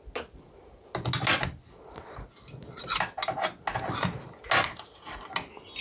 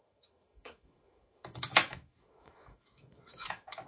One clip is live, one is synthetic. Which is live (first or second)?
first